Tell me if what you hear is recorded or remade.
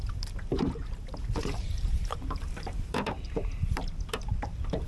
remade